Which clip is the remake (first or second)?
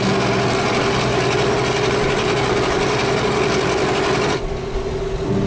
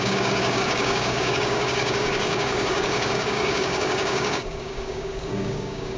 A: second